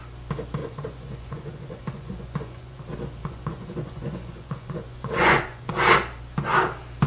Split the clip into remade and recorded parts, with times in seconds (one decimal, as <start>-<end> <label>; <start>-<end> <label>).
0.0-0.6 recorded; 0.6-2.8 remade; 2.8-3.2 recorded; 3.2-5.7 remade; 5.7-7.1 recorded